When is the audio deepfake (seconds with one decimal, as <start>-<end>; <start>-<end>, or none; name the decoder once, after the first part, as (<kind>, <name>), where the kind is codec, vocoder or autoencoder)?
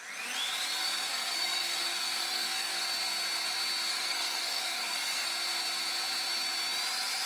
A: 0.8-2.8 (codec, SNAC); 3.9-5.3